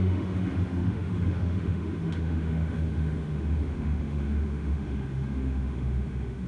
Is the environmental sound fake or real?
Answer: fake